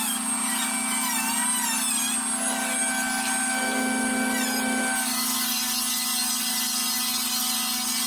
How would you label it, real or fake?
real